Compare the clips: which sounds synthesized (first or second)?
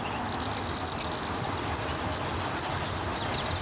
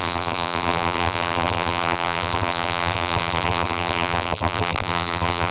second